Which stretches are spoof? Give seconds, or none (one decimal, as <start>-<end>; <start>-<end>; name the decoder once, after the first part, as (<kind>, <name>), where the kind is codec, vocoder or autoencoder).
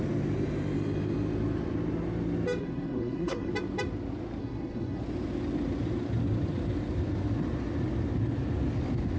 2.6-3.5 (codec, SNAC); 4.4-5.0